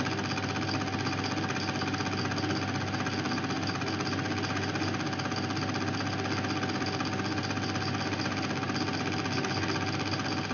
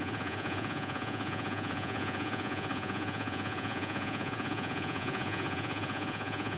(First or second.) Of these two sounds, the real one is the first